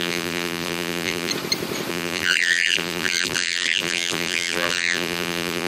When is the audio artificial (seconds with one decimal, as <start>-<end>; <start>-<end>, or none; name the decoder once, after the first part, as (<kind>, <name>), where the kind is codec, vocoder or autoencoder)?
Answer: 0.0-1.3 (vocoder, BigVGAN v2); 1.9-5.7